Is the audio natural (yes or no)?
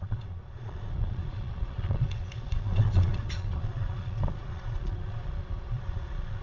no